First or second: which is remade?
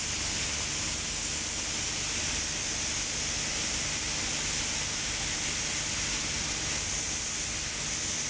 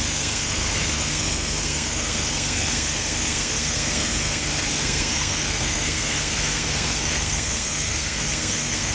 second